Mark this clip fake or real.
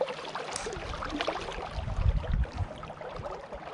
real